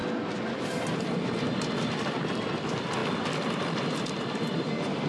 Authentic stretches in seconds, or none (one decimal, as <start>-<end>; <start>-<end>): 0.0-5.1